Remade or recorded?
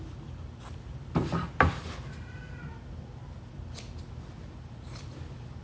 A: recorded